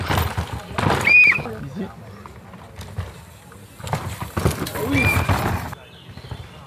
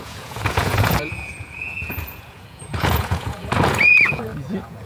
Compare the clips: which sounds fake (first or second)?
second